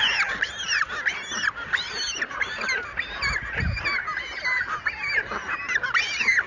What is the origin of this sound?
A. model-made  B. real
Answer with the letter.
B